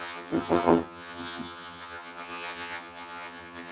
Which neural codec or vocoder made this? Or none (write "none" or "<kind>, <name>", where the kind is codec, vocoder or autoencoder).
vocoder, HiFi-GAN